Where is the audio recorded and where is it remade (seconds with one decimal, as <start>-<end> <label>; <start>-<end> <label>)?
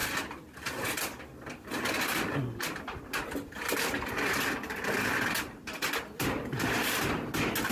0.0-7.7 recorded